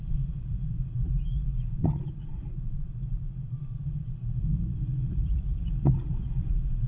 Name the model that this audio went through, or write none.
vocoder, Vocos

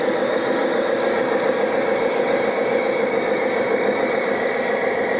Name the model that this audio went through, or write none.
codec, DAC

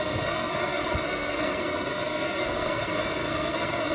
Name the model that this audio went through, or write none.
codec, SNAC